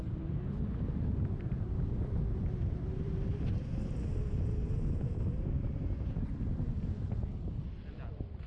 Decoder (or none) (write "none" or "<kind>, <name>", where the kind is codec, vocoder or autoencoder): none